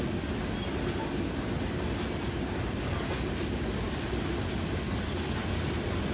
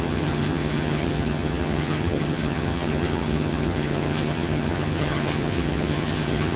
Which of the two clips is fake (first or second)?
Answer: second